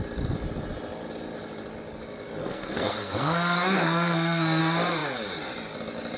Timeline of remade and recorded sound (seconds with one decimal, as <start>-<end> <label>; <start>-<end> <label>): 0.0-2.4 recorded; 2.4-4.6 remade; 4.6-6.2 recorded

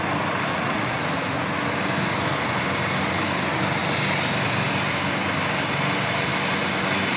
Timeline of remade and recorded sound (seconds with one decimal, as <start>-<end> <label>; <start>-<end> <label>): 0.0-0.5 recorded; 0.5-1.0 remade; 1.0-7.2 recorded

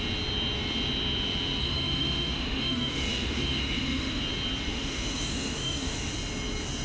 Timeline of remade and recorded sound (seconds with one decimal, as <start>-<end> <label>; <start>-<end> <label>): 0.0-1.6 recorded; 1.6-4.2 remade; 4.2-4.7 recorded; 4.7-6.1 remade; 6.1-6.8 recorded

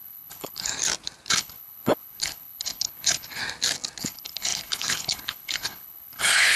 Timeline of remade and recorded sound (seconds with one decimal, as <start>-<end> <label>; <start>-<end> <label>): 0.0-0.7 remade; 0.7-1.3 recorded; 1.3-3.4 remade; 3.4-4.0 recorded; 4.0-6.6 remade

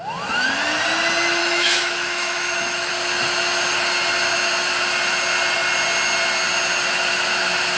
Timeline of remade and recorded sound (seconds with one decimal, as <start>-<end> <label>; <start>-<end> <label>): 0.0-1.4 recorded; 1.4-2.9 remade; 2.9-7.8 recorded